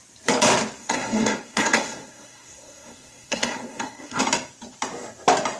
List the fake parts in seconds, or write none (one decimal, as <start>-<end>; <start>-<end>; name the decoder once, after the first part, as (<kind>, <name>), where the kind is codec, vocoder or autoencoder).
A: 0.8-4.2 (codec, SNAC)

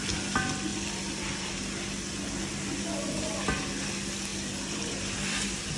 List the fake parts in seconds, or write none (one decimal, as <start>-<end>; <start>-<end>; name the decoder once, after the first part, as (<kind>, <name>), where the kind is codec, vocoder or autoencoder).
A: 0.7-1.6 (vocoder, BigVGAN v2); 4.3-5.8